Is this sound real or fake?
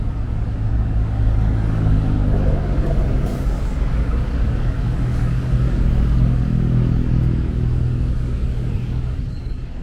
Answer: fake